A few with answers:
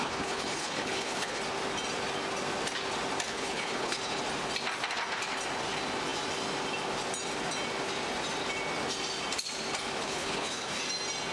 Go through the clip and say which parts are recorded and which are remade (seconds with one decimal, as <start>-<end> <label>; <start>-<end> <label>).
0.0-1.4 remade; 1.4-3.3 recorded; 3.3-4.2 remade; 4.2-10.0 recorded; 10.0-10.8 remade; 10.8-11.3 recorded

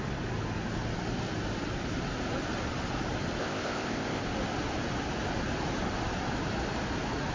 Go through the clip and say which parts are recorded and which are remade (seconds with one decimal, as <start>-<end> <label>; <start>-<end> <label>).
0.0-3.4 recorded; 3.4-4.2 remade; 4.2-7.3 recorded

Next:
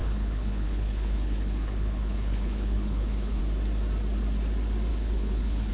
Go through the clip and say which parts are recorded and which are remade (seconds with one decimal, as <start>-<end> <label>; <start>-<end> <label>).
0.0-3.4 remade; 3.4-4.9 recorded; 4.9-5.7 remade

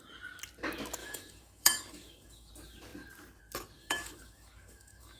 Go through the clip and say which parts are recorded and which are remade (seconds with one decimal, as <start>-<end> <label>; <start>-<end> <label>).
0.0-1.0 recorded; 1.0-2.5 remade; 2.5-3.8 recorded; 3.8-5.2 remade

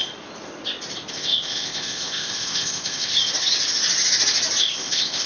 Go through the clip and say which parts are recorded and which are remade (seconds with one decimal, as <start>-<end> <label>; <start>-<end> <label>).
0.0-1.1 recorded; 1.1-3.1 remade; 3.1-4.6 recorded; 4.6-5.3 remade

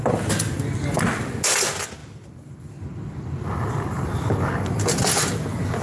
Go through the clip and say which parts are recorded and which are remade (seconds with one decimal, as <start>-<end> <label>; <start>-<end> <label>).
0.0-5.8 recorded

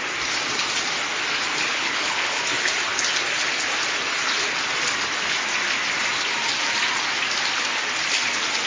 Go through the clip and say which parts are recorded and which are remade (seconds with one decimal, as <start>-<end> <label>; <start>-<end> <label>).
0.0-1.7 recorded; 1.7-2.4 remade; 2.4-8.7 recorded